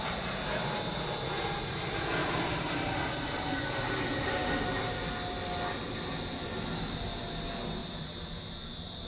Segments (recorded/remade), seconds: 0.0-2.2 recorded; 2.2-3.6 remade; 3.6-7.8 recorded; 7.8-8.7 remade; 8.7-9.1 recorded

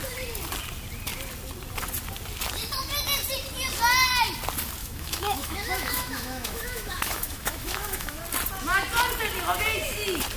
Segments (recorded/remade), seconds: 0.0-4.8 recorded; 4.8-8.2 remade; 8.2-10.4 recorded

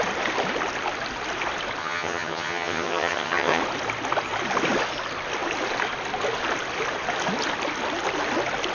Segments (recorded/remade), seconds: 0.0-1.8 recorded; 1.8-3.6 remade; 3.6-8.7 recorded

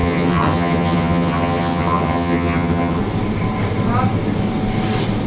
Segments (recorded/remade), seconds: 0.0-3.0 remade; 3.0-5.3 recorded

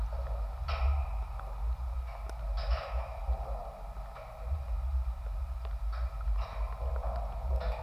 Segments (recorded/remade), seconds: 0.0-2.6 recorded; 2.6-3.2 remade; 3.2-7.8 recorded